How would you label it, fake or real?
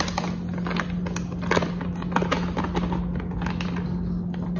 real